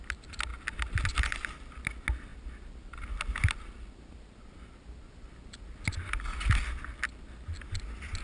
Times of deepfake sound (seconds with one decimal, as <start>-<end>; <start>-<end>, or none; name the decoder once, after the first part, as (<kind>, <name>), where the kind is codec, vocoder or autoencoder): none